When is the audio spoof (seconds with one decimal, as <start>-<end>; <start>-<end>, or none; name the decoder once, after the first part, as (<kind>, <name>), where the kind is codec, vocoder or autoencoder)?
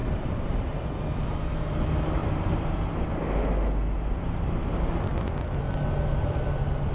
0.0-0.6 (vocoder, BigVGAN v2); 2.2-3.2